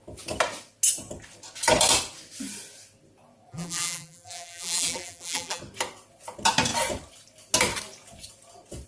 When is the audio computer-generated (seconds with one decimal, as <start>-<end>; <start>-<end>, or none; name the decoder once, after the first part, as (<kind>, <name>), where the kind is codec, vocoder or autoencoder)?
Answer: 3.5-5.6 (vocoder, BigVGAN v2)